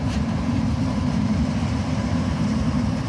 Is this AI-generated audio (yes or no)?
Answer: yes